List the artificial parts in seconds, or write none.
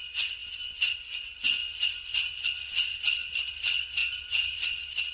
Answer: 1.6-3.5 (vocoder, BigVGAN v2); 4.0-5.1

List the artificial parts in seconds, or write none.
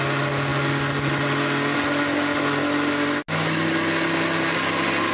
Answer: none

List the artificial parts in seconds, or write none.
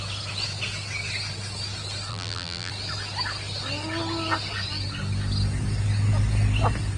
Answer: 2.1-2.7 (vocoder, BigVGAN v2)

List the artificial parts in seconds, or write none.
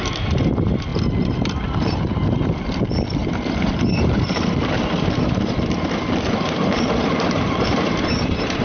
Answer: 3.2-8.6 (vocoder, BigVGAN v2)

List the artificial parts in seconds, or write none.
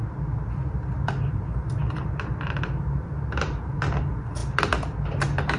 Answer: 1.3-4.4 (vocoder, BigVGAN v2); 5.1-5.6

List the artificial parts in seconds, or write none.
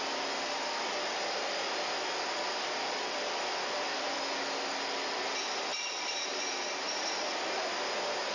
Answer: 5.7-7.4 (vocoder, BigVGAN v2)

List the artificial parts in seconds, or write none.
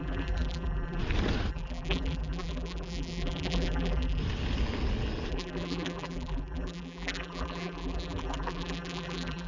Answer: 0.0-1.0 (vocoder, BigVGAN v2); 1.5-4.2; 5.3-9.5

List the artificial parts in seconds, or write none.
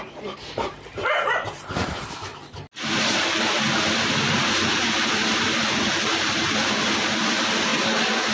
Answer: 0.0-2.3 (vocoder, BigVGAN v2); 3.2-7.7